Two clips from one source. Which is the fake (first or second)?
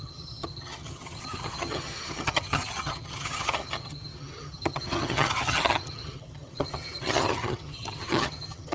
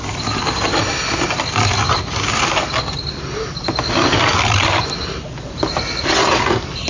first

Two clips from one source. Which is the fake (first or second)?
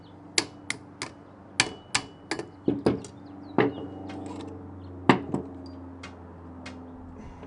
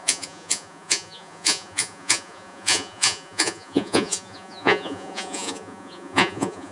second